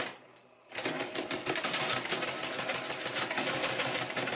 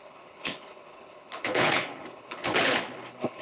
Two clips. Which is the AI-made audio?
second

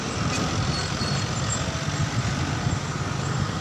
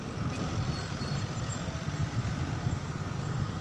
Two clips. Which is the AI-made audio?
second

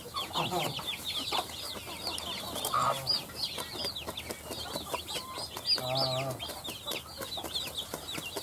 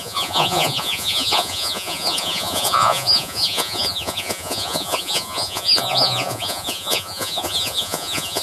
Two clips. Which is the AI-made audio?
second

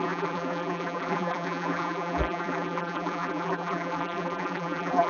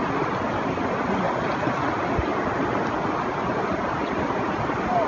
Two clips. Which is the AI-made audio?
first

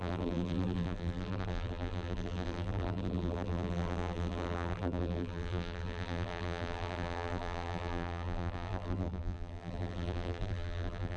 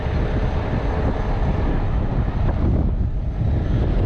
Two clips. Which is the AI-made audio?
first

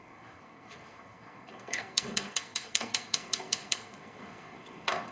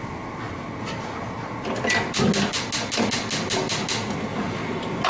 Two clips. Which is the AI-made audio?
first